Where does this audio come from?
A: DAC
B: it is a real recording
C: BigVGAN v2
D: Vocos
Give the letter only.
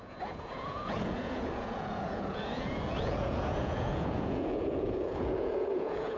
D